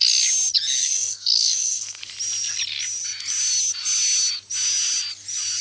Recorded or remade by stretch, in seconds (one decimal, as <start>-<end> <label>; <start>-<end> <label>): 0.0-0.8 recorded; 0.8-2.1 remade; 2.1-5.6 recorded